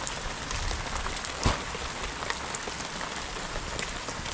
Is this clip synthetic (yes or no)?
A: no